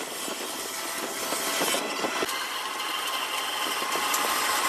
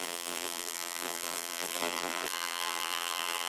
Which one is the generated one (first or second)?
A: second